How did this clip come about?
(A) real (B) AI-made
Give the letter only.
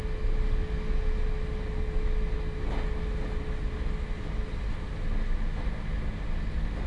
A